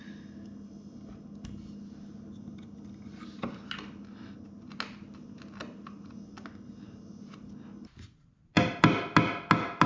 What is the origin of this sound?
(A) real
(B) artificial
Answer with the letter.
A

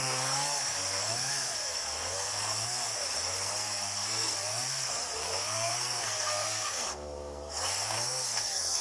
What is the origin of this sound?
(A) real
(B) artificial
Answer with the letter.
B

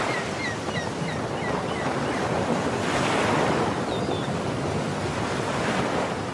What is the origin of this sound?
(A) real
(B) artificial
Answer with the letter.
A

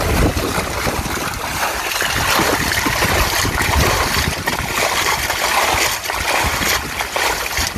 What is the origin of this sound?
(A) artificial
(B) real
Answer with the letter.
B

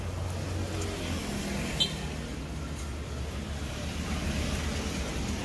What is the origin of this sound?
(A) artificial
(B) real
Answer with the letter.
B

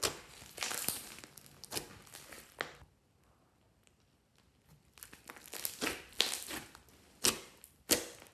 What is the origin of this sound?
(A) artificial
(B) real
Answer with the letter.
B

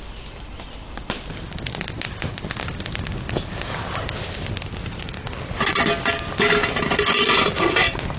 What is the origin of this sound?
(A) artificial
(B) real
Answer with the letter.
B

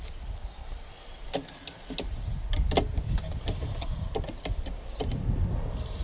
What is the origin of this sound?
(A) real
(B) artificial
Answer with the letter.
A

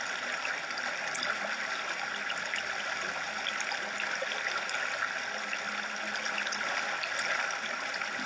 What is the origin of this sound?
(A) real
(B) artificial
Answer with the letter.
A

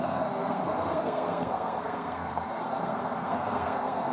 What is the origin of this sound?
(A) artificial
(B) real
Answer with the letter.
A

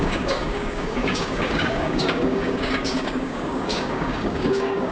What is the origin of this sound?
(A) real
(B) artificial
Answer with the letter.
B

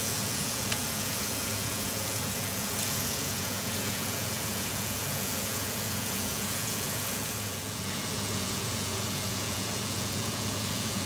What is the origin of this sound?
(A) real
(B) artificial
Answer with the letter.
B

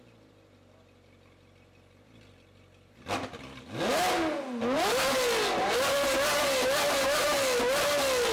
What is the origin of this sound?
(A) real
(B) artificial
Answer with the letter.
A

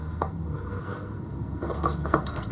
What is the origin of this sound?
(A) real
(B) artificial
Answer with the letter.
B